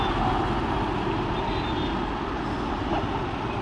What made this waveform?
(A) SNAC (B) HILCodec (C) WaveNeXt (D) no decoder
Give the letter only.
D